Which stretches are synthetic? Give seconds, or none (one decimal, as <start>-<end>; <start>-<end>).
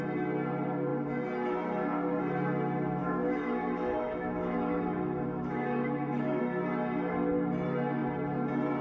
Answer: 3.0-6.4